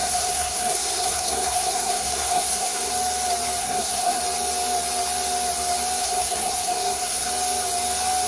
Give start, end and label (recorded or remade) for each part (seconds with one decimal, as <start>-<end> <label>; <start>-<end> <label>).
0.0-2.9 remade; 2.9-3.6 recorded; 3.6-4.2 remade; 4.2-6.0 recorded; 6.0-7.3 remade; 7.3-8.3 recorded